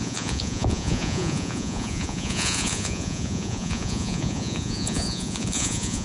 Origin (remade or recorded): remade